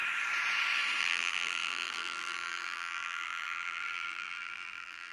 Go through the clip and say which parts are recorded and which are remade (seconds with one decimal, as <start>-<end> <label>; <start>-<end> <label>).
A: 0.0-1.0 recorded; 1.0-5.1 remade